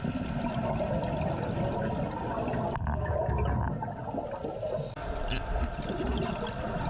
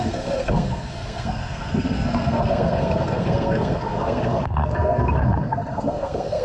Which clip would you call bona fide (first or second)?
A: first